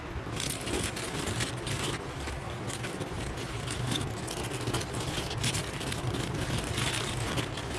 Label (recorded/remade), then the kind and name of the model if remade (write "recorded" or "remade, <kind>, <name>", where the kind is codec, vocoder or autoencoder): recorded